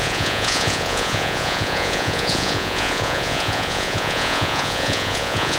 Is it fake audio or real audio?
fake